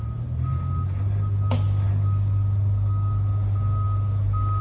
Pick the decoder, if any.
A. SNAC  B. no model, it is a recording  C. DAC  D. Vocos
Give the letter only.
B